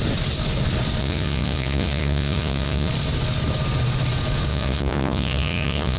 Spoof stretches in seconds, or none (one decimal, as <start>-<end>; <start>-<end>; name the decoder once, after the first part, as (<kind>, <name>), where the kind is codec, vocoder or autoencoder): 1.0-2.9 (vocoder, Vocos); 4.5-6.0